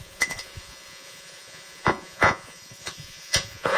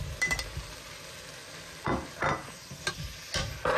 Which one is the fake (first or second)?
first